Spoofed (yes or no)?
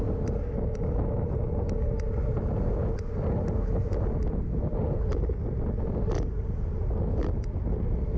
no